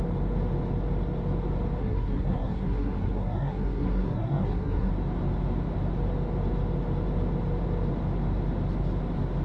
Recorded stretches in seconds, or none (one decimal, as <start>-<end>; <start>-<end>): 0.0-1.8; 4.9-9.4